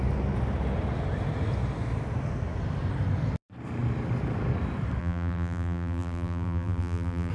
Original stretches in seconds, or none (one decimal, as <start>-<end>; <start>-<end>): 0.0-5.0